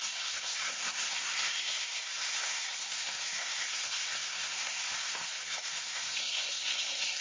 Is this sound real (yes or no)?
no